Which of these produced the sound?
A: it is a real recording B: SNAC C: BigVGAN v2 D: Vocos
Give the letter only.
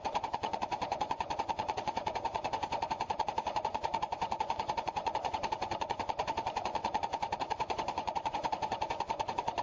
D